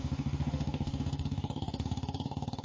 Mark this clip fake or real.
fake